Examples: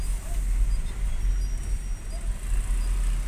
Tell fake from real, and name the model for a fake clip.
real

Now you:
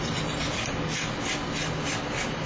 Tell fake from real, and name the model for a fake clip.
real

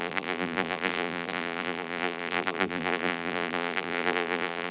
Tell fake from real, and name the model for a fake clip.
fake, vocoder, BigVGAN v2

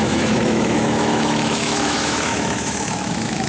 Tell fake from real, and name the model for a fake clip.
fake, autoencoder, DAC-VAE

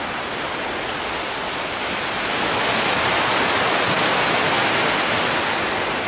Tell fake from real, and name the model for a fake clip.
real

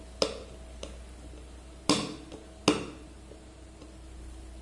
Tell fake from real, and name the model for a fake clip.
real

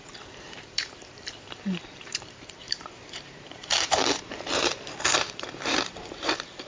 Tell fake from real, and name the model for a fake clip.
fake, vocoder, BigVGAN v2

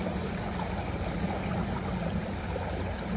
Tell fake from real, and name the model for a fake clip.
real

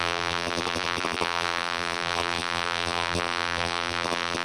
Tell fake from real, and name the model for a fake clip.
fake, vocoder, BigVGAN v2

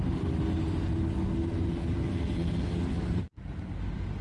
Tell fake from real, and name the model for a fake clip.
real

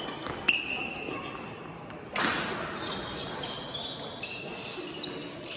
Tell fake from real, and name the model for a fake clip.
real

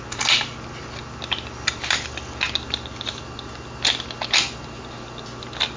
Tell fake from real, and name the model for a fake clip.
real